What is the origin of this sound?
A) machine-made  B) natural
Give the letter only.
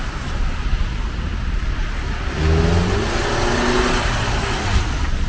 B